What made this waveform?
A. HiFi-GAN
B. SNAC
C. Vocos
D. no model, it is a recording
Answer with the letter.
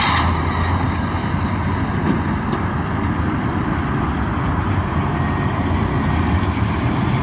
D